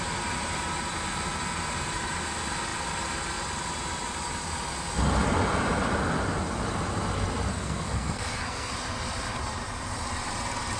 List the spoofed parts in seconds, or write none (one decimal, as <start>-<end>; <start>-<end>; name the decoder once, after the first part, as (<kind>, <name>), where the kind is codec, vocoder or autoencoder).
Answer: 7.5-8.7 (codec, SNAC)